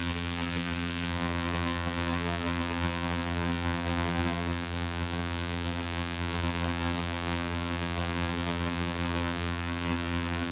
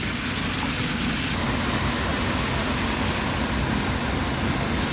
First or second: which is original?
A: second